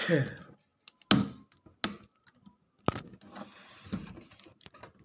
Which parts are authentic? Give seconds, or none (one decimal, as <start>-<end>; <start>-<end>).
0.0-5.0